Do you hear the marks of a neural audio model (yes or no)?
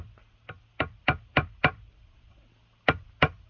no